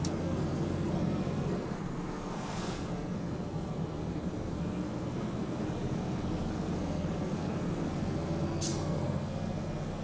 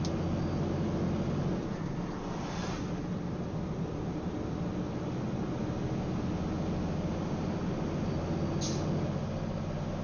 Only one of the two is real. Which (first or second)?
second